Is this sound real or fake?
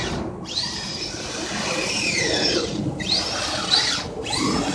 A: real